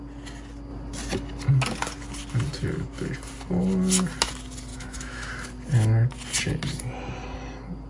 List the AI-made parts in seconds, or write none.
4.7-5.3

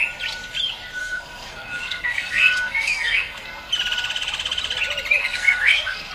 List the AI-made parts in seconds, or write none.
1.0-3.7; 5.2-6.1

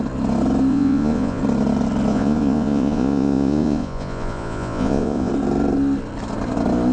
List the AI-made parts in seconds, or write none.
0.7-1.4; 2.1-5.3

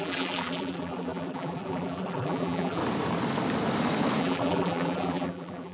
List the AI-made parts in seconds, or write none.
0.0-2.8; 4.2-5.7

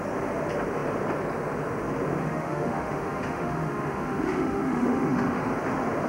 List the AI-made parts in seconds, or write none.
2.2-5.4

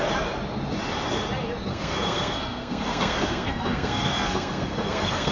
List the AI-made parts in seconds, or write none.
1.7-5.3

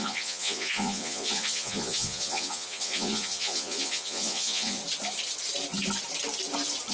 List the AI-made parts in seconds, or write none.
0.0-4.8

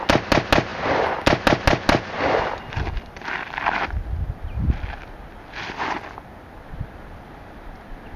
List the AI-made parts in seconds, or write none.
none